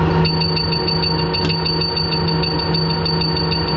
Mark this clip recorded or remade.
recorded